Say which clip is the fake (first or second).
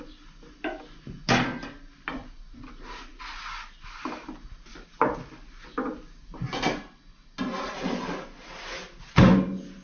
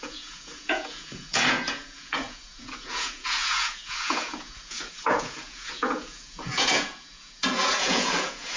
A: second